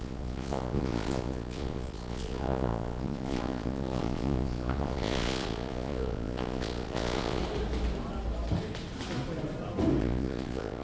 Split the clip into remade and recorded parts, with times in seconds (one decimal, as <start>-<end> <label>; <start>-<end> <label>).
0.0-7.4 remade; 7.4-10.0 recorded; 10.0-10.8 remade